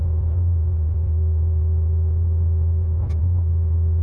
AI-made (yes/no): no